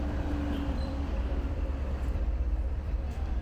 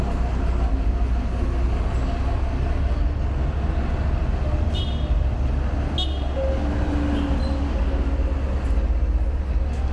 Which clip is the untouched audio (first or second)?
second